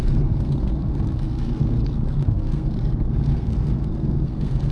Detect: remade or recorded remade